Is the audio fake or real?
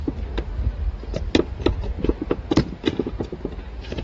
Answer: real